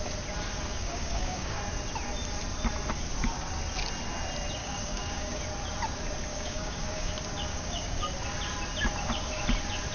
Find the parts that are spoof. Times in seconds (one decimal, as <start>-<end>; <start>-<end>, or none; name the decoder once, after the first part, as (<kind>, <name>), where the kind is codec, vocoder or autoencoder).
0.7-1.6 (codec, DAC); 4.6-5.4; 6.3-7.1; 7.5-8.0